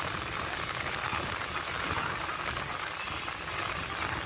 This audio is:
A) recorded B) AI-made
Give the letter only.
A